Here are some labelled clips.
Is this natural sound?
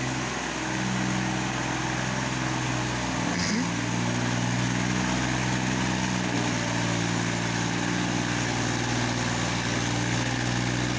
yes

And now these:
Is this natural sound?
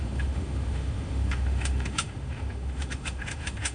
no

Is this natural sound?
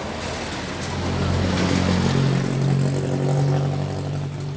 yes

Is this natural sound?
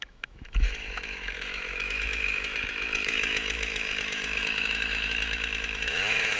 no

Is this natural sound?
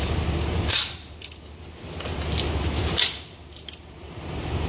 yes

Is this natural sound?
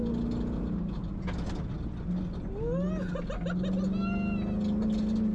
yes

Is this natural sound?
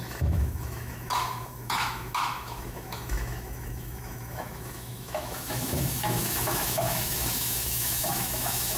no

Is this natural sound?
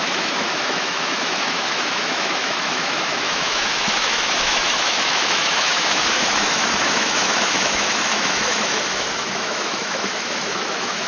no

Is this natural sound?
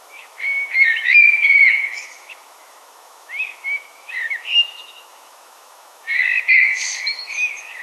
no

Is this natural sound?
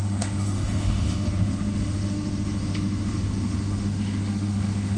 no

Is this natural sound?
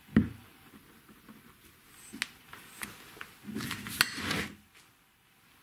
yes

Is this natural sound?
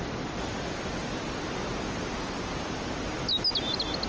yes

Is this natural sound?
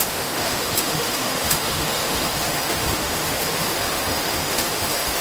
no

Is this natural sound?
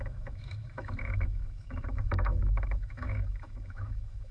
no